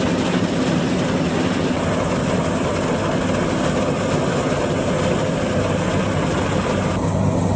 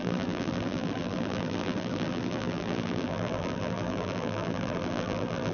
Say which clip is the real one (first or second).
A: first